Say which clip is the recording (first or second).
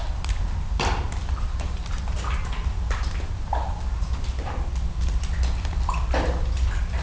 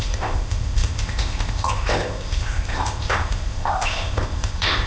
first